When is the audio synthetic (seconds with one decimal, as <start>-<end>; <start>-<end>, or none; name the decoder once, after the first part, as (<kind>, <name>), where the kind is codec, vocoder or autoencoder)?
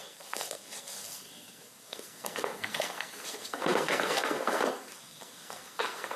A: 0.0-6.2 (codec, SNAC)